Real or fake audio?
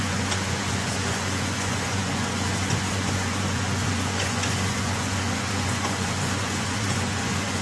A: fake